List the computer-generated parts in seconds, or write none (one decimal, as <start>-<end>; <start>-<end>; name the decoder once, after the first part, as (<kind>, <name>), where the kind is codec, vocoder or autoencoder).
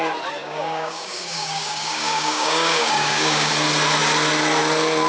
0.4-3.5 (codec, DAC)